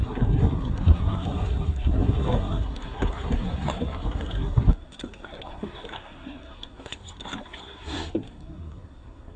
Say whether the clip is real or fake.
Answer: fake